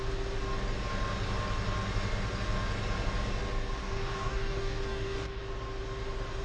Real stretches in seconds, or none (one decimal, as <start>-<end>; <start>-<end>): 0.0-3.8; 5.4-6.4